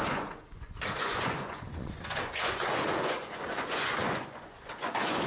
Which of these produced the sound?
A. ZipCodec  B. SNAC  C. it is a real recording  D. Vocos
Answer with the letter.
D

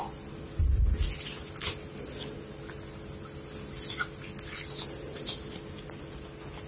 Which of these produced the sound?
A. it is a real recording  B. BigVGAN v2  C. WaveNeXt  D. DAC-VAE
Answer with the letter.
A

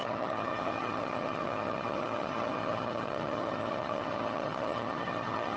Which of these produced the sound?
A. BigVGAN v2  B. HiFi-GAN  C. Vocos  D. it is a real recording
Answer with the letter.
B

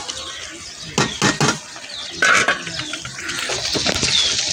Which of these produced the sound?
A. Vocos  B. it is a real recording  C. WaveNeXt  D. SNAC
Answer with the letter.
B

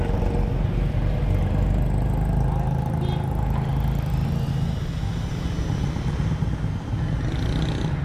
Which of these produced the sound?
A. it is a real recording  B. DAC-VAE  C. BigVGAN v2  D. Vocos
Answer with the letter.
A